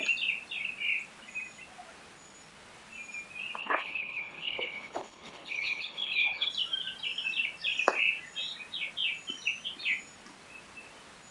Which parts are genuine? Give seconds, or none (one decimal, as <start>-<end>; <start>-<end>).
0.0-3.6; 6.5-11.3